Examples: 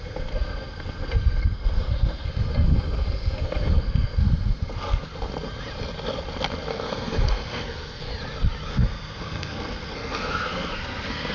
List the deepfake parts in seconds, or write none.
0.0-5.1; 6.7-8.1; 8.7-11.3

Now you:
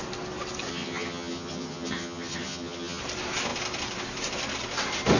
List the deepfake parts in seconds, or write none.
0.7-3.0

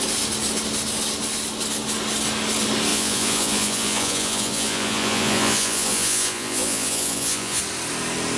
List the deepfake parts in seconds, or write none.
2.9-7.6

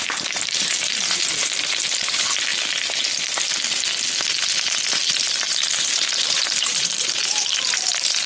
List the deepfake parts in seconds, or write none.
0.0-2.5; 4.9-8.3

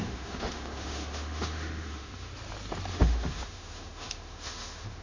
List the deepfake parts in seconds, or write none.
0.0-2.3; 2.9-5.0

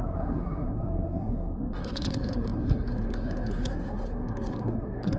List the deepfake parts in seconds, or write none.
0.0-5.2

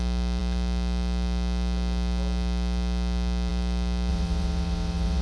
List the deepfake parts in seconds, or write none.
4.1-5.2